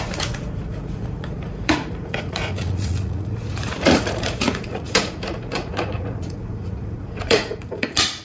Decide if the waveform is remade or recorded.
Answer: remade